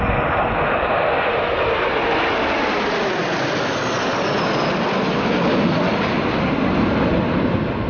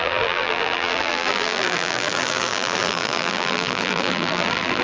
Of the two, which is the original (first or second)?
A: first